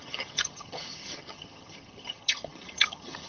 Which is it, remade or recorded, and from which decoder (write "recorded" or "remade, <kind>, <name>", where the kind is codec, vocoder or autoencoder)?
remade, vocoder, HiFi-GAN